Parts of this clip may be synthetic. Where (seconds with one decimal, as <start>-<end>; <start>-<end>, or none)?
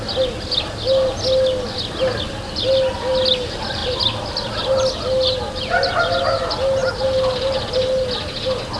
none